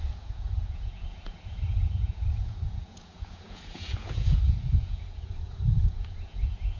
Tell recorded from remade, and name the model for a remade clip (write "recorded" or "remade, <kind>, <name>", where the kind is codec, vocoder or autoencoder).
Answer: remade, vocoder, Vocos